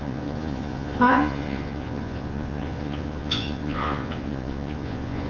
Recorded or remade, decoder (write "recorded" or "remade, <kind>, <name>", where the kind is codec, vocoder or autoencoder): remade, vocoder, Vocos